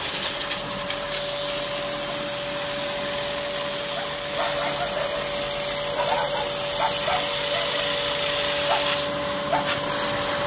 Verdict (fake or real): real